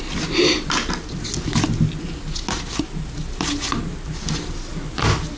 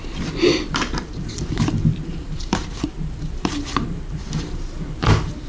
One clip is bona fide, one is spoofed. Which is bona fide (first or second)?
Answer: first